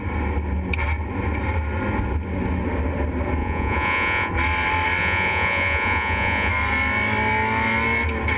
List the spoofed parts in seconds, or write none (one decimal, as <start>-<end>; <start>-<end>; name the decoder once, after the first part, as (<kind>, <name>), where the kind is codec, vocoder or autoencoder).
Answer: 3.4-4.3 (vocoder, Vocos); 5.0-6.5